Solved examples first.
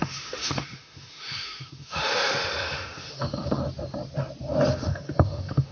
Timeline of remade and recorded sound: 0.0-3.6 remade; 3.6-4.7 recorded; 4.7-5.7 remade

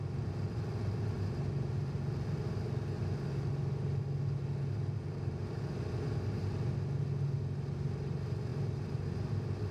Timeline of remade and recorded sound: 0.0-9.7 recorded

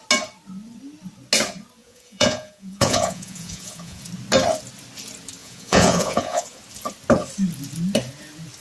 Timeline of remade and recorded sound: 0.0-1.8 recorded; 1.8-4.0 remade; 4.0-5.4 recorded; 5.4-6.6 remade; 6.6-8.6 recorded